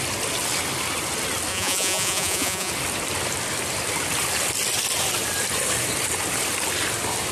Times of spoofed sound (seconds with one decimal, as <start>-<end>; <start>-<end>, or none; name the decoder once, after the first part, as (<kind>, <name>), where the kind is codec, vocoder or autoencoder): 1.5-2.7 (vocoder, Vocos)

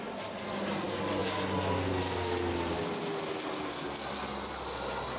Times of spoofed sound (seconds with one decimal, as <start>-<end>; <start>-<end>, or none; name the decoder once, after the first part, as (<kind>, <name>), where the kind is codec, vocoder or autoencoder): none

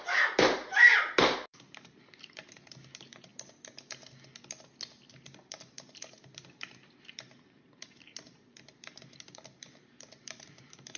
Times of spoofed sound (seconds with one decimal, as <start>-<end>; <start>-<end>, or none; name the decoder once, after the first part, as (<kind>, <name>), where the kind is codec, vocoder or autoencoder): 0.0-3.3 (vocoder, BigVGAN v2); 5.1-11.0

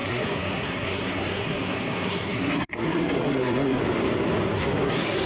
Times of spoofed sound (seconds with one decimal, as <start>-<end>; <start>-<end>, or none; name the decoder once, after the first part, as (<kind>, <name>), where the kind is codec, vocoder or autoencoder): 0.0-3.8 (codec, SNAC); 4.5-5.3